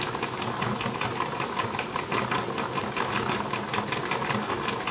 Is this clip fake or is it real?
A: real